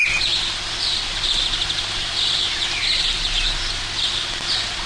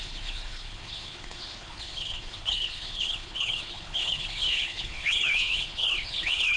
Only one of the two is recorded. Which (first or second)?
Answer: first